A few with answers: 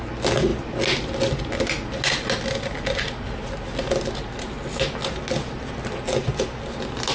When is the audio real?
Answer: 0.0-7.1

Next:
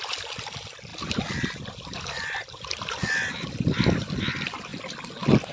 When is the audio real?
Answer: 0.0-5.5

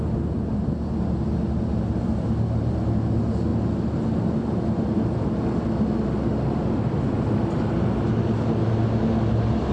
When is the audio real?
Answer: 0.0-9.7

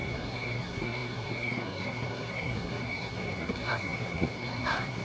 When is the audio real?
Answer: none

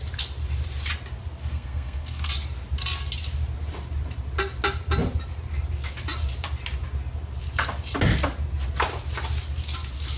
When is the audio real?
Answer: 0.0-1.4; 2.3-10.2

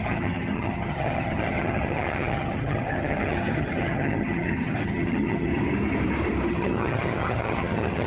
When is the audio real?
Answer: 5.5-6.5